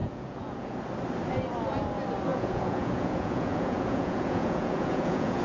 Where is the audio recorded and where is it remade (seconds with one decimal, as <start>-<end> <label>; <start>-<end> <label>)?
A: 0.0-0.8 remade; 0.8-2.3 recorded; 2.3-5.4 remade